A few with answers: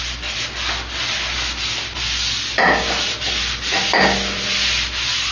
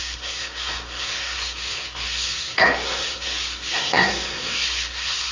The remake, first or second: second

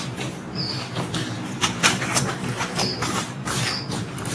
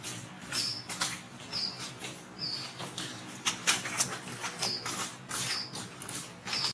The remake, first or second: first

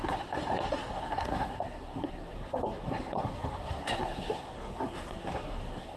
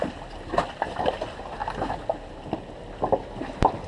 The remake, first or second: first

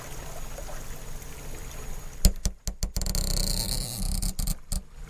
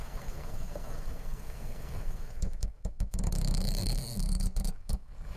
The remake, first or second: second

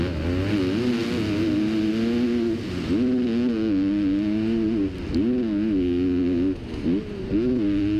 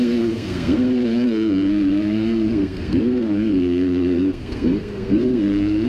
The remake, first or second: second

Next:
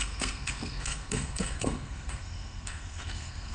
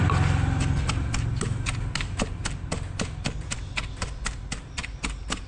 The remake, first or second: first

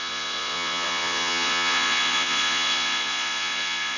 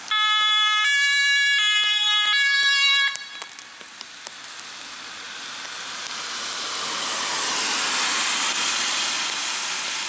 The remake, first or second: first